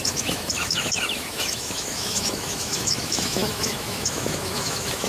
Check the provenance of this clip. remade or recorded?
remade